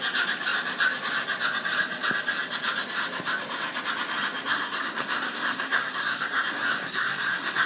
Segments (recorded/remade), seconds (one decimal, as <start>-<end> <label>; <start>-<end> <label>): 0.0-4.5 recorded; 4.5-7.7 remade